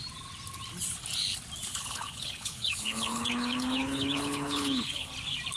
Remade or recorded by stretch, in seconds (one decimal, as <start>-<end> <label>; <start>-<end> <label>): 0.0-1.7 recorded; 1.7-5.1 remade; 5.1-5.6 recorded

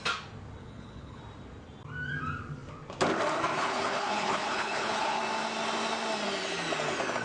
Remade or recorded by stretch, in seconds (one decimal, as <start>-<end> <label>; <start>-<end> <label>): 0.0-0.6 recorded; 0.6-1.2 remade; 1.2-3.6 recorded; 3.6-5.2 remade; 5.2-7.2 recorded

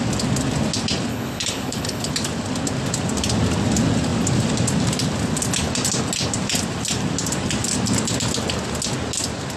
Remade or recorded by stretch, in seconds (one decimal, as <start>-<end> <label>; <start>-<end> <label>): 0.0-1.1 recorded; 1.1-2.1 remade; 2.1-9.6 recorded

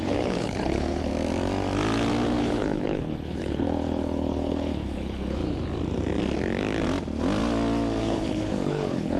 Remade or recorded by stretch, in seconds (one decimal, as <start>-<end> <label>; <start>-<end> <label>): 0.0-1.1 remade; 1.1-2.4 recorded; 2.4-5.4 remade; 5.4-8.0 recorded; 8.0-9.2 remade